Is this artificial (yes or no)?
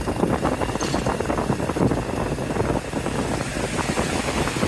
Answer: no